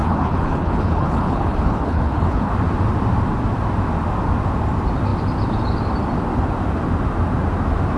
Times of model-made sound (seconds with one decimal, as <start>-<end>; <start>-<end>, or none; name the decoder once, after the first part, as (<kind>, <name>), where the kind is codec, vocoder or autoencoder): 0.0-2.5 (codec, HILCodec)